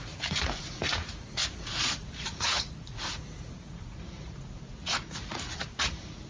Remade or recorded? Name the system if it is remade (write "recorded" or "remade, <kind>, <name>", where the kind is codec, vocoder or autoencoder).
remade, vocoder, Vocos